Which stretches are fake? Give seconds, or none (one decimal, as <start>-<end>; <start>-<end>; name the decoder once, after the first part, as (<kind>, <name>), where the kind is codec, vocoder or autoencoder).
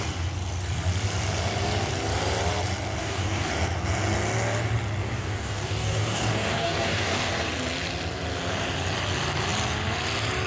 3.0-3.5 (codec, DAC); 5.0-7.3